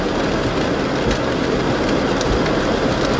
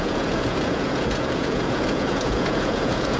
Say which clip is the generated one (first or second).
second